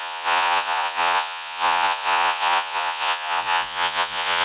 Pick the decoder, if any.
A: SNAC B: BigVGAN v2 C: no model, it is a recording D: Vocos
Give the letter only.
D